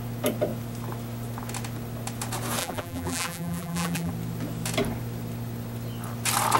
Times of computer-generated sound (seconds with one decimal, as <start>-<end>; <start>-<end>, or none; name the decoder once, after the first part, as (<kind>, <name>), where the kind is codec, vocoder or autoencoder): 2.6-4.1 (vocoder, BigVGAN v2)